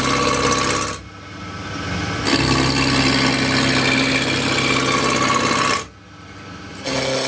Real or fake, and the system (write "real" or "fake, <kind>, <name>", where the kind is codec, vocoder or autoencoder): real